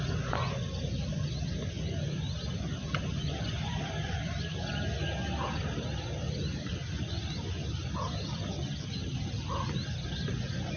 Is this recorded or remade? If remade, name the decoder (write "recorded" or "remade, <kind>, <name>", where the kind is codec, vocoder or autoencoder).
recorded